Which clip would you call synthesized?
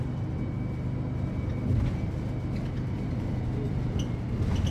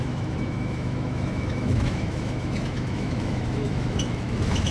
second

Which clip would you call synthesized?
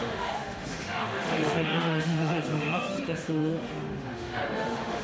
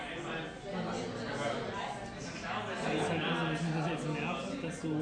first